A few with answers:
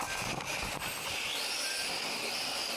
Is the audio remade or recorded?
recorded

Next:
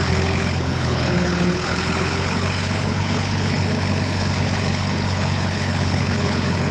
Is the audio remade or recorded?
remade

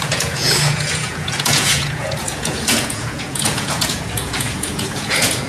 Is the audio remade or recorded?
remade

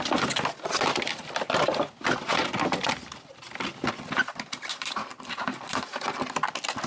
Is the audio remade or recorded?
recorded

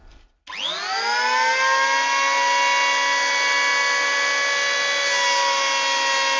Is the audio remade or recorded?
recorded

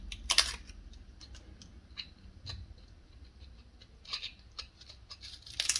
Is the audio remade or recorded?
recorded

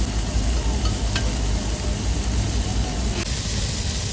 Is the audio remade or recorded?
recorded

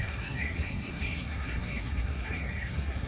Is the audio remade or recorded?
remade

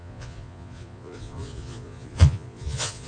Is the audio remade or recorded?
remade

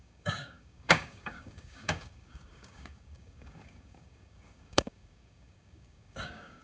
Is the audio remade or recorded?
remade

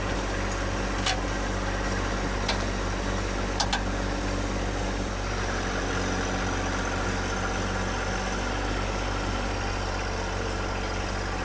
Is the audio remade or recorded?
recorded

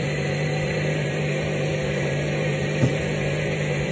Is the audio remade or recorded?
remade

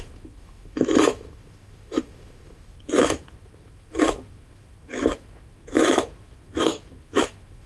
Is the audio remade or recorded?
remade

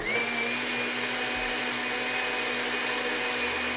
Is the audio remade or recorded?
recorded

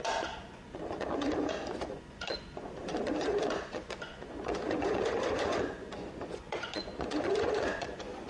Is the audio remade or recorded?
remade